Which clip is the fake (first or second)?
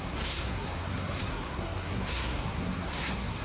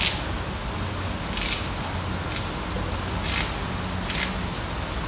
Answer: first